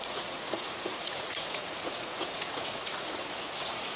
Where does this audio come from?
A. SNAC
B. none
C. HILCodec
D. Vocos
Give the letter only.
D